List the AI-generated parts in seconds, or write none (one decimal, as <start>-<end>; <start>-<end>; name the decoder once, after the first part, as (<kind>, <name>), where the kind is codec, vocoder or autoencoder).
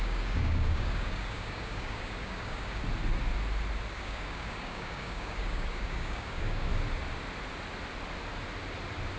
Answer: 0.0-2.8 (codec, DAC); 3.9-6.7